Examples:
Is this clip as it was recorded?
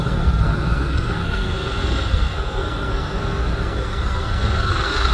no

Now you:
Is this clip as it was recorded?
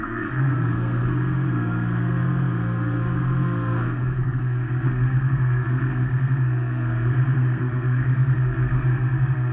no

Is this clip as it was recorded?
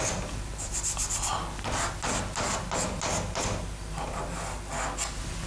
yes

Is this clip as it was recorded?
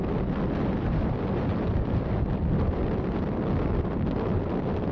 yes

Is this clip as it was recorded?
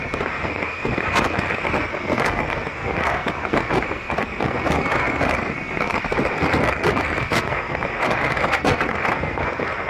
no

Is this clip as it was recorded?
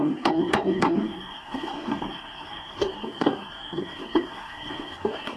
no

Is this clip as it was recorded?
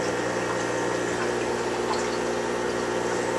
yes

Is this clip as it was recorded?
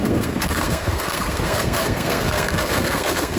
no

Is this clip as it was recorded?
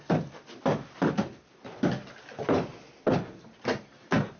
yes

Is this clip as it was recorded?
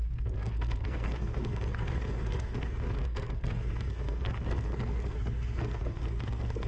no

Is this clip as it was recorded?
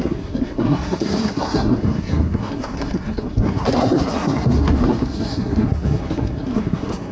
no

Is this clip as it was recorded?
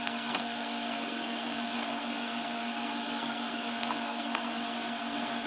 no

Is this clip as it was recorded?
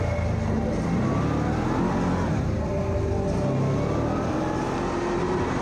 yes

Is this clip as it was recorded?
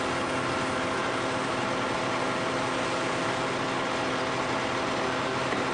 yes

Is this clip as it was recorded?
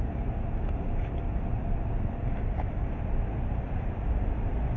yes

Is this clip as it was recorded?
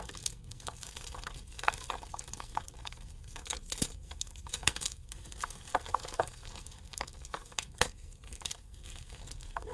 no